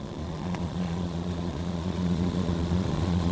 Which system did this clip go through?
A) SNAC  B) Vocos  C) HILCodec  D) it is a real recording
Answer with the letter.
B